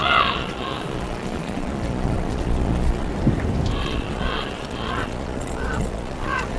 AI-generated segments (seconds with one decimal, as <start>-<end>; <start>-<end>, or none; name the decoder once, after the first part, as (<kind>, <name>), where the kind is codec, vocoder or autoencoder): 0.0-3.1 (vocoder, Vocos); 3.8-6.6